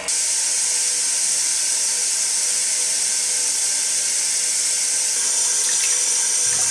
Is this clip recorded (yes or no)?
yes